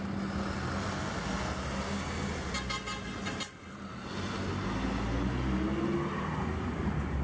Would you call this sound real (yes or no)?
yes